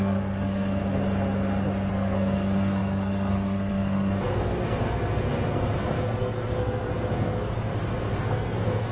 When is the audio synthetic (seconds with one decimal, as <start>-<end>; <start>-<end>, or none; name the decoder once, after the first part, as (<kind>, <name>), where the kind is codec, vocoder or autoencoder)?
0.0-0.8 (codec, SNAC); 1.9-7.7; 8.2-8.9